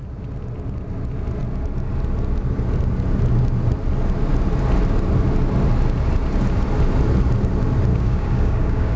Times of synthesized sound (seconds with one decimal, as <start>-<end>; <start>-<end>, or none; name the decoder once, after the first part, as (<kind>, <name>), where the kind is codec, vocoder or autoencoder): 7.9-9.0 (codec, DAC)